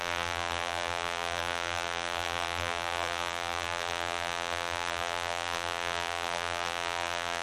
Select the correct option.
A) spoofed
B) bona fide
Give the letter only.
A